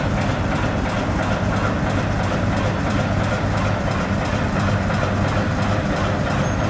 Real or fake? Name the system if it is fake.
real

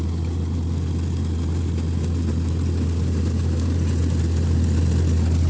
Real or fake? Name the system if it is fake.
real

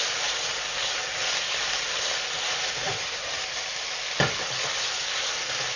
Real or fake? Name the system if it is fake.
real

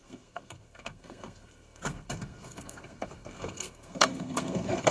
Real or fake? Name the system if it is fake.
fake, codec, SNAC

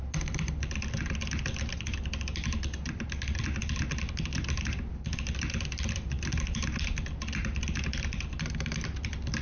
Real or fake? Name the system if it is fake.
real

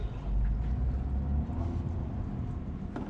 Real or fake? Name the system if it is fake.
real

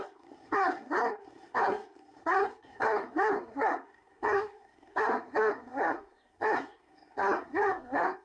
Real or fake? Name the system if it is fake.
fake, codec, SNAC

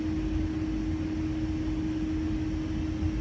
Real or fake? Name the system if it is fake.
real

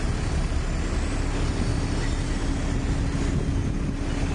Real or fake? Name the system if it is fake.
real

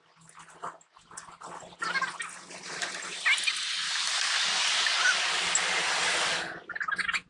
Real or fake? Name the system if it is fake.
real